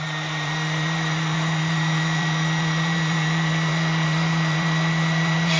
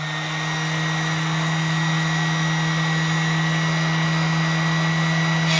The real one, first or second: second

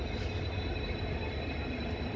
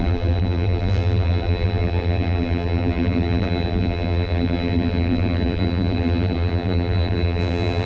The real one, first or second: first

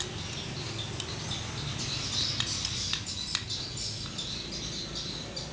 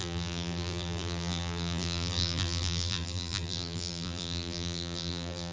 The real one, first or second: first